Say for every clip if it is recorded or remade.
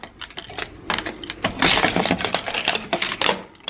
recorded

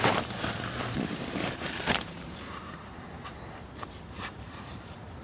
remade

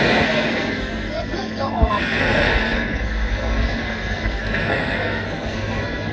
remade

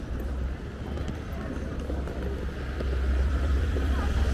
remade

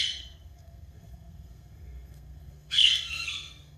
remade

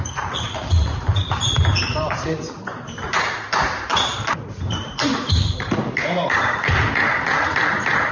remade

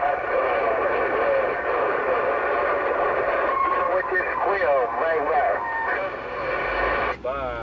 recorded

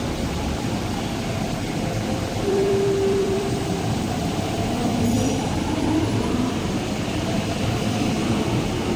remade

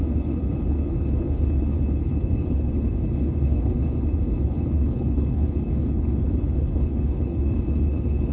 remade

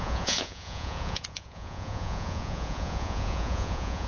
remade